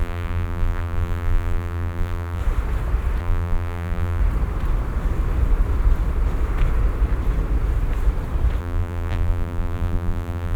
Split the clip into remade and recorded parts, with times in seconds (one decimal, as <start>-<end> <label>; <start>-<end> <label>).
0.0-2.4 remade; 2.4-3.2 recorded; 3.2-4.2 remade; 4.2-8.6 recorded; 8.6-10.6 remade